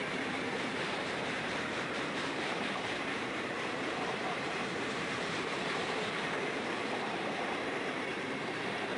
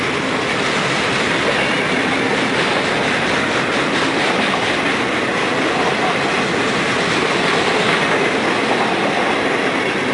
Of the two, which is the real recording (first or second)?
second